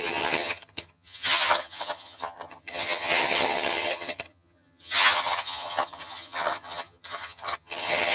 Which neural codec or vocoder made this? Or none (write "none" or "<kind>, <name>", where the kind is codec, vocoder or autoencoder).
vocoder, HiFi-GAN